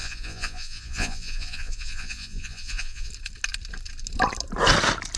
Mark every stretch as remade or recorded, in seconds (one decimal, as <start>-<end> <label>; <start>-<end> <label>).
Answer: 0.0-3.1 remade; 3.1-5.2 recorded